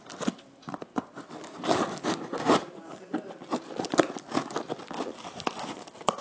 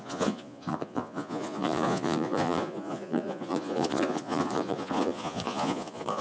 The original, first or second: first